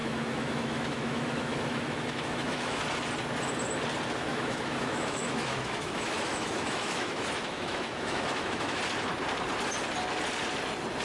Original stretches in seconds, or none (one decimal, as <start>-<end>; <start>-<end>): 2.8-4.3; 8.8-11.0